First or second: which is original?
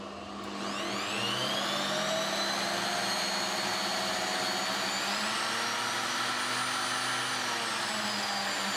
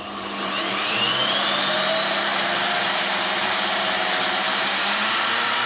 first